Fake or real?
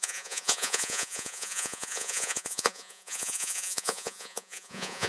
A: fake